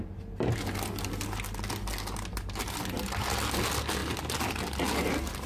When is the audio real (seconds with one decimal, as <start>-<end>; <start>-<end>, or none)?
0.0-5.5